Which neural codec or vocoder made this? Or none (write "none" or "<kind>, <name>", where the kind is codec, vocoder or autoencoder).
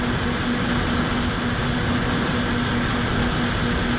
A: none